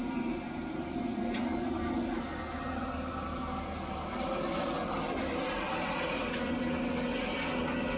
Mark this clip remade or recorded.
recorded